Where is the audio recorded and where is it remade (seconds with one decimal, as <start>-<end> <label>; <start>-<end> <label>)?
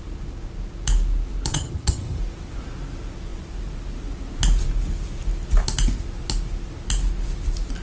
0.0-1.5 recorded; 1.5-2.2 remade; 2.2-7.8 recorded